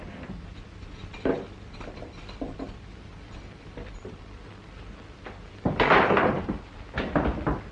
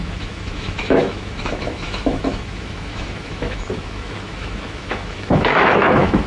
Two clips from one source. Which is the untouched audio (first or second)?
first